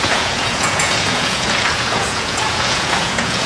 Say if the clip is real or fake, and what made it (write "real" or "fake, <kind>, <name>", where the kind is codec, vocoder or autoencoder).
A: fake, vocoder, Vocos